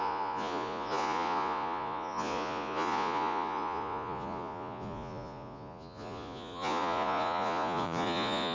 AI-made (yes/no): yes